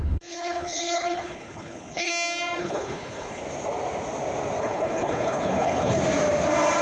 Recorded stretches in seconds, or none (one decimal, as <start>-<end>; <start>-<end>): 2.1-2.6; 3.4-4.6; 6.0-6.8